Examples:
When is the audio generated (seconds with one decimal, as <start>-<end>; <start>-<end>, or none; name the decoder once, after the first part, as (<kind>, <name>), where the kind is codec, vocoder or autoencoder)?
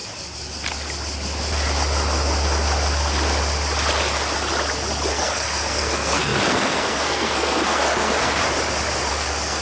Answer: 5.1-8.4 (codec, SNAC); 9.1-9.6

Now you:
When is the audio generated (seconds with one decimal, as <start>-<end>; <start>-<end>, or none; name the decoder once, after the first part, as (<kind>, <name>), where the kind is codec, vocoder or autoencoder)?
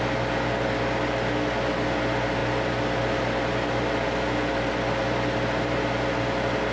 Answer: none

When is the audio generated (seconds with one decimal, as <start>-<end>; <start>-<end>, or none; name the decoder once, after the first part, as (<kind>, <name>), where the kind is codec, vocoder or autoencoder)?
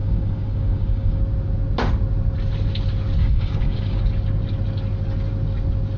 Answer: 0.0-1.2 (codec, DAC); 3.2-4.0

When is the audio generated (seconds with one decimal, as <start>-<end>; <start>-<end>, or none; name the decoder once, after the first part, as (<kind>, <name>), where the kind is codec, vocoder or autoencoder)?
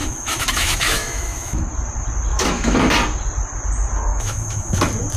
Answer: 0.0-1.7 (autoencoder, DAC-VAE); 2.3-2.9; 4.1-4.8